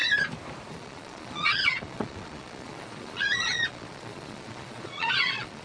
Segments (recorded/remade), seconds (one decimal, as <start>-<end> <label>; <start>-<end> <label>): 0.0-0.7 recorded; 0.7-5.6 remade